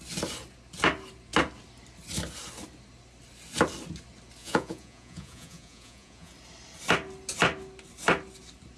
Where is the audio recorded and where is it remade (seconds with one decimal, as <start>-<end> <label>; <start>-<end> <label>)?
0.0-4.4 recorded; 4.4-6.3 remade; 6.3-8.8 recorded